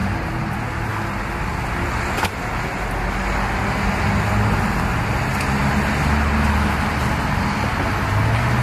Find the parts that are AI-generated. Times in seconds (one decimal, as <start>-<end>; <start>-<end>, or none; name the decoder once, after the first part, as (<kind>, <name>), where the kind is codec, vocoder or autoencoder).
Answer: none